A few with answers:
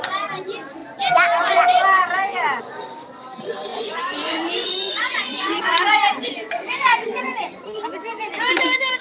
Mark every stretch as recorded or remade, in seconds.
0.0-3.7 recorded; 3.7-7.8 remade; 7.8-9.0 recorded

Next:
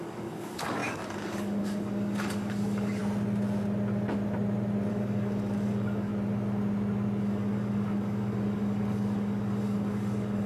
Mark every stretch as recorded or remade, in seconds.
0.0-3.0 remade; 3.0-4.9 recorded; 4.9-6.1 remade; 6.1-7.2 recorded; 7.2-10.5 remade

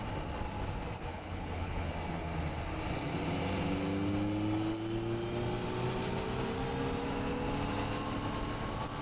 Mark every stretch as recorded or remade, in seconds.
0.0-1.1 recorded; 1.1-1.9 remade; 1.9-9.0 recorded

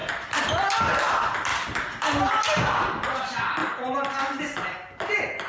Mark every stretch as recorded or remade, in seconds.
0.0-5.5 recorded

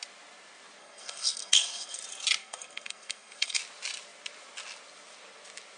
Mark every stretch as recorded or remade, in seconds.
0.0-0.8 recorded; 0.8-2.0 remade; 2.0-2.4 recorded; 2.4-3.6 remade; 3.6-5.8 recorded

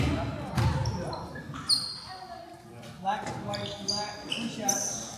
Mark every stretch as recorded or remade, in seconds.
0.0-5.2 recorded